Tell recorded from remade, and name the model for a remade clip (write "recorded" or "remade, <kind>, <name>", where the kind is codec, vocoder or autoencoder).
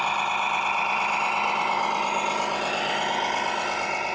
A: recorded